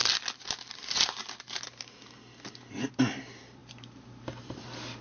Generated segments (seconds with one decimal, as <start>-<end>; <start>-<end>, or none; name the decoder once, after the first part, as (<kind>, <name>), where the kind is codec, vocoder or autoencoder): 3.6-4.6 (vocoder, BigVGAN v2)